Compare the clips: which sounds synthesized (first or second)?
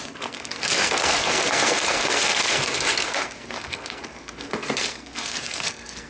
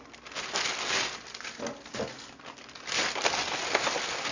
first